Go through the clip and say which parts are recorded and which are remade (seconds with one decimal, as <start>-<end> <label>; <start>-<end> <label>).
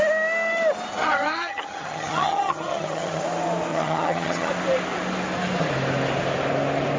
0.0-1.0 recorded; 1.0-3.2 remade; 3.2-3.7 recorded; 3.7-4.5 remade; 4.5-7.0 recorded